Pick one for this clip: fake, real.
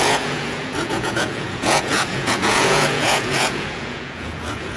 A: fake